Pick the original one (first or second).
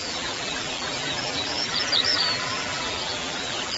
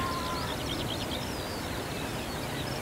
second